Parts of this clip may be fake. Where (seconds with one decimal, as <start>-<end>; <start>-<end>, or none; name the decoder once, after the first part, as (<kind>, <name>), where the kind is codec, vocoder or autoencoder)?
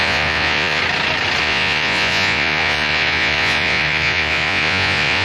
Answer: 0.0-0.8 (vocoder, Vocos); 1.4-5.2